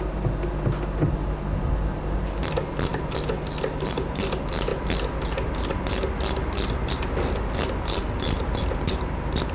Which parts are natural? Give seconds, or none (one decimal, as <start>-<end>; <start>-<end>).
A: 0.0-9.5